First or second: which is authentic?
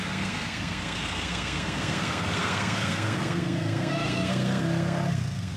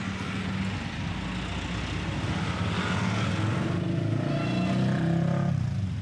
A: second